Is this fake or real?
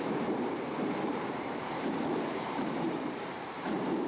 fake